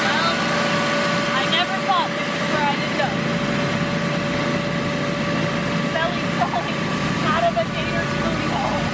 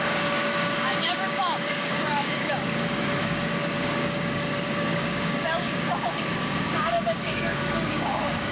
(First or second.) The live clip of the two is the first